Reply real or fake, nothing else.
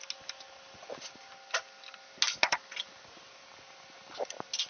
real